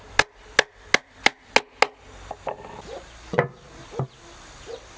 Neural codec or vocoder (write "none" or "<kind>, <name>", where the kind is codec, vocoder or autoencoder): none